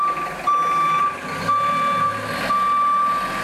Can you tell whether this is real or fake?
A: real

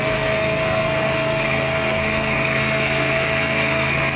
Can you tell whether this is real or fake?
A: fake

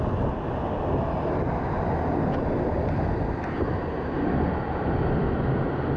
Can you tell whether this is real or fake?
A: real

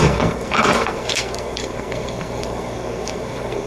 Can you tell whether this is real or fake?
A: fake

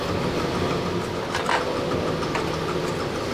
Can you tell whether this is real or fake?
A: real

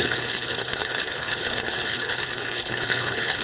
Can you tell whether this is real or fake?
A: fake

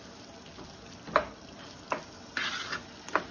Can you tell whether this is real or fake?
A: real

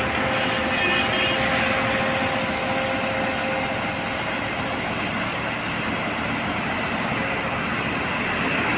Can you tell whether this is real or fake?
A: real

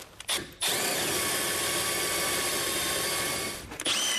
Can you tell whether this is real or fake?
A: real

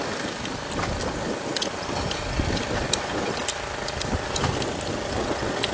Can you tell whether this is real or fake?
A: real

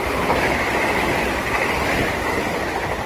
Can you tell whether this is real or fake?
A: real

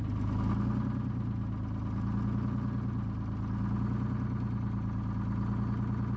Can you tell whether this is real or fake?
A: real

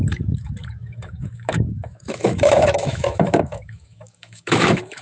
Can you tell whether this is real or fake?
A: fake